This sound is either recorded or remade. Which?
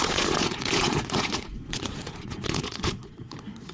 remade